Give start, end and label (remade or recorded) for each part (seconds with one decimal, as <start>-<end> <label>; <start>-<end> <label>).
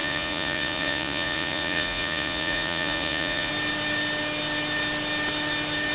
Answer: 0.0-3.5 remade; 3.5-5.9 recorded